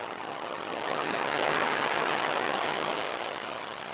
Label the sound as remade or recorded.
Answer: remade